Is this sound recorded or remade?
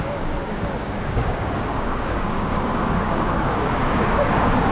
remade